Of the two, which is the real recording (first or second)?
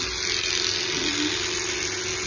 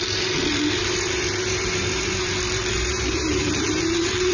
first